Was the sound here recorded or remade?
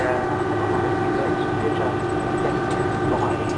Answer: recorded